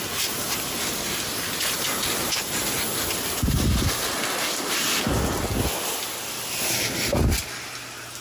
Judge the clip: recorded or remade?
recorded